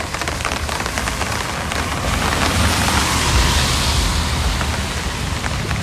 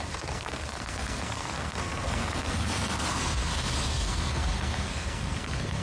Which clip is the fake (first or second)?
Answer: second